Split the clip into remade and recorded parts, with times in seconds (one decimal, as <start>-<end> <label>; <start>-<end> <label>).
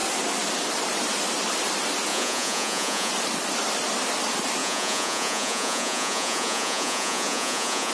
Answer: 0.0-2.1 recorded; 2.1-3.1 remade; 3.1-4.6 recorded; 4.6-7.9 remade